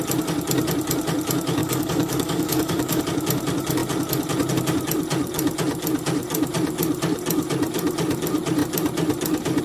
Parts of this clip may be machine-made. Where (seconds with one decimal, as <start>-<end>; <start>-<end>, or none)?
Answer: 1.6-3.0